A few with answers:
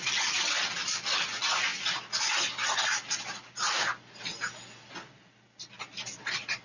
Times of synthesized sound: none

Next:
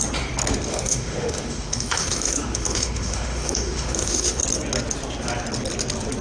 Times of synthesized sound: 0.7-4.4 (autoencoder, DAC-VAE)

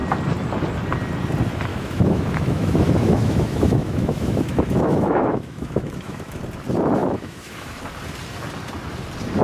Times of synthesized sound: 1.7-6.4 (autoencoder, DAC-VAE); 7.0-7.8

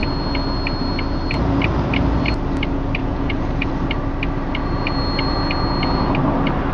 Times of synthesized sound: 3.0-3.7 (vocoder, Vocos)

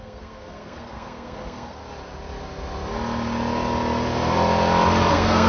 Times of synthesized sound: 0.0-1.8 (codec, SNAC); 5.1-5.5

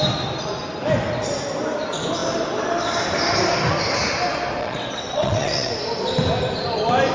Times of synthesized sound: 4.6-5.7 (vocoder, WaveNeXt)

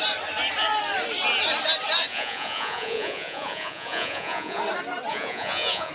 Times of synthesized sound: 2.1-4.6 (vocoder, Vocos); 5.1-5.9